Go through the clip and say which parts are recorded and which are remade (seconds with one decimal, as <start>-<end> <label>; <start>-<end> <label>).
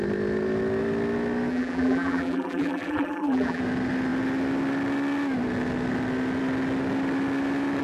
0.0-1.5 recorded; 1.5-3.6 remade; 3.6-7.8 recorded